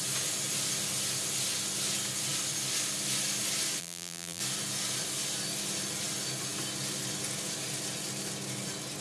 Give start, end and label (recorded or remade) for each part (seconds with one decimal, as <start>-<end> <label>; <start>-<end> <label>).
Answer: 0.0-3.8 recorded; 3.8-4.4 remade; 4.4-9.0 recorded